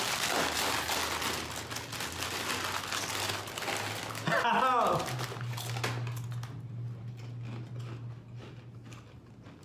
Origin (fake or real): real